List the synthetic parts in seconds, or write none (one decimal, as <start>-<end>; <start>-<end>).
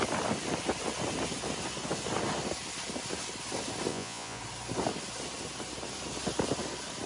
3.9-4.4